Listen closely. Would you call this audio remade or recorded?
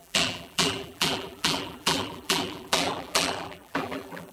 remade